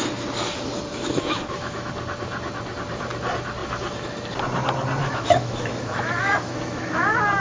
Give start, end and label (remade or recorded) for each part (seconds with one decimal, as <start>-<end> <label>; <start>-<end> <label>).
0.0-0.9 recorded; 0.9-1.9 remade; 1.9-5.0 recorded; 5.0-7.0 remade; 7.0-7.4 recorded

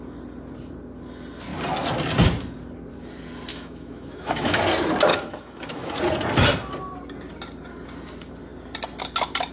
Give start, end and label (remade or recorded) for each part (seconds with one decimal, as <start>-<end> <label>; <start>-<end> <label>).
0.0-3.5 recorded; 3.5-4.6 remade; 4.6-5.1 recorded; 5.1-6.0 remade; 6.0-9.5 recorded

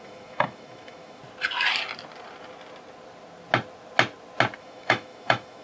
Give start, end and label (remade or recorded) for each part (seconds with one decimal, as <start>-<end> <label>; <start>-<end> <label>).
0.0-1.2 remade; 1.2-4.6 recorded; 4.6-5.6 remade

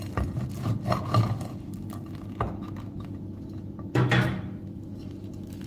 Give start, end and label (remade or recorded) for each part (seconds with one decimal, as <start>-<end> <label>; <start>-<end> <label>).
0.0-2.5 recorded; 2.5-5.7 remade

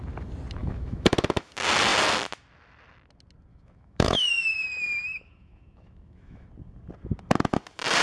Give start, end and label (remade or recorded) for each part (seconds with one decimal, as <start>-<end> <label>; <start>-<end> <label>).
0.0-0.6 recorded; 0.6-1.5 remade; 1.5-3.5 recorded; 3.5-6.5 remade; 6.5-8.0 recorded

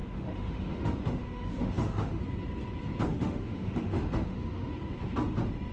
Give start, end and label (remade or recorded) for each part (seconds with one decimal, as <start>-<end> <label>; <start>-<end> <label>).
0.0-2.2 remade; 2.2-3.1 recorded; 3.1-4.7 remade; 4.7-5.7 recorded

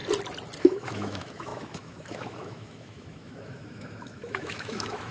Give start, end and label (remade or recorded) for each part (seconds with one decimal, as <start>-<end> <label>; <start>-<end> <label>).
0.0-0.6 recorded; 0.6-5.1 remade

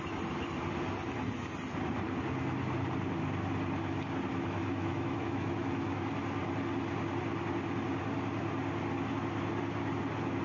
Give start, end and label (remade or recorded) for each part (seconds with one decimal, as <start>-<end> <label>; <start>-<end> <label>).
0.0-4.3 recorded; 4.3-6.1 remade; 6.1-10.4 recorded